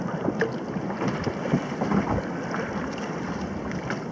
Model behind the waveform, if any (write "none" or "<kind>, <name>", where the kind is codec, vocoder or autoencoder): none